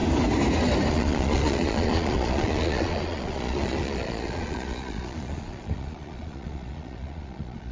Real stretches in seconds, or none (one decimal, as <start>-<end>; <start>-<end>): 0.0-0.9